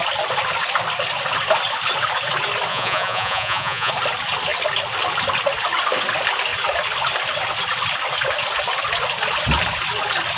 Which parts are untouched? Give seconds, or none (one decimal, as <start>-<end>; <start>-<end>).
0.0-2.7; 3.9-10.4

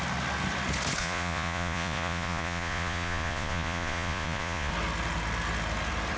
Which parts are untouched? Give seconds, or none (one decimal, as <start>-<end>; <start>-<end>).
0.0-1.0; 4.7-6.2

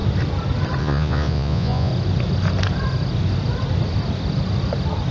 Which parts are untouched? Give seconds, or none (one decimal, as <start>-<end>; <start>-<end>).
0.0-0.8; 1.9-5.1